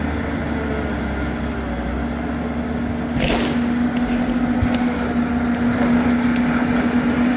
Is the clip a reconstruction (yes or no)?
no